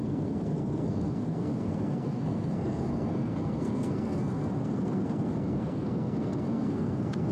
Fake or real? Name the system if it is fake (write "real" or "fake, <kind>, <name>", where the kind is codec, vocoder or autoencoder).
fake, codec, SNAC